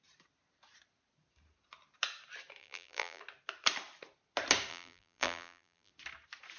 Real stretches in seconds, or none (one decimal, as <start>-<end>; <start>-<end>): 0.0-2.6; 3.2-4.7; 5.9-6.6